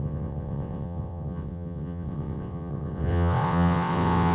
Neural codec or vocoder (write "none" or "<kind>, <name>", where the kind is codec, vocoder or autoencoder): vocoder, WaveNeXt